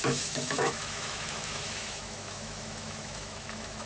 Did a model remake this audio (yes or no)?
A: yes